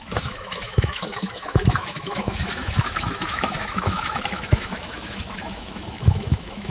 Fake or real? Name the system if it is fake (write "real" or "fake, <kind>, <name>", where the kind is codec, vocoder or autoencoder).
fake, autoencoder, DAC-VAE